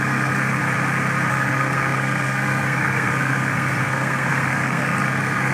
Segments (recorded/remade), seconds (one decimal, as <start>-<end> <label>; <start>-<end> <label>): 0.0-0.6 remade; 0.6-1.3 recorded; 1.3-5.5 remade